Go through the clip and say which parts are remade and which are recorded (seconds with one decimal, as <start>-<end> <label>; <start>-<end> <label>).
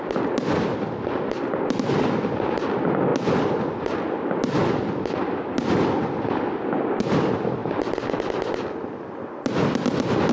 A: 0.0-10.3 recorded